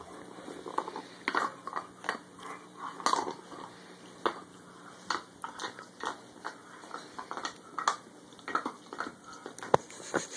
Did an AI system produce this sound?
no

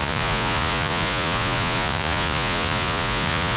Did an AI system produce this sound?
yes